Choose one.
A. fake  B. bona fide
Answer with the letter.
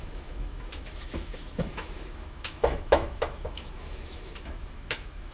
A